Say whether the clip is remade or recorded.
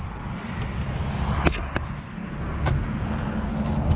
recorded